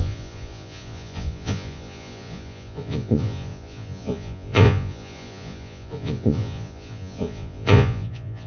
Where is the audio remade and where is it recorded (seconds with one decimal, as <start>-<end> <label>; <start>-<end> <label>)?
0.0-8.5 remade